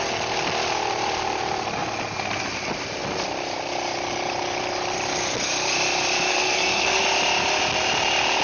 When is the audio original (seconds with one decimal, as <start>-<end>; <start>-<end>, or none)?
0.0-6.3; 7.0-8.4